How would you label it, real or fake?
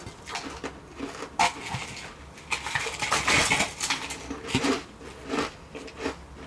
real